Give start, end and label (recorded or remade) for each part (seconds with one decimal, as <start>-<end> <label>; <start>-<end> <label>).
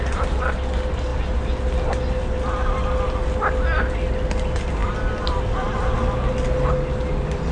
0.0-7.5 recorded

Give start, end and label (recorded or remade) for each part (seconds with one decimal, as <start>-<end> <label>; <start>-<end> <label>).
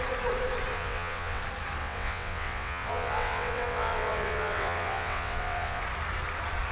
0.0-0.7 recorded; 0.7-1.4 remade; 1.4-1.8 recorded; 1.8-5.8 remade; 5.8-6.7 recorded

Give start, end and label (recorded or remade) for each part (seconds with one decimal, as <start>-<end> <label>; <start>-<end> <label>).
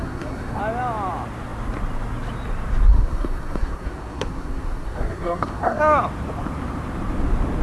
0.0-0.6 remade; 0.6-2.9 recorded; 2.9-5.8 remade; 5.8-7.6 recorded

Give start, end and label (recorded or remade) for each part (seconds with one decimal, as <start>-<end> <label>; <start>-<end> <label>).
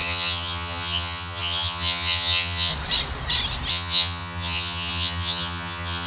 0.0-2.7 remade; 2.7-3.7 recorded; 3.7-6.1 remade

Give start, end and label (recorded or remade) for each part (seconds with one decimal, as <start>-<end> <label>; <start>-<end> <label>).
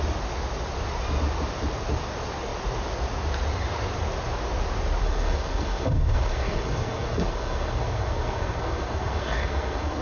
0.0-5.0 recorded; 5.0-10.0 remade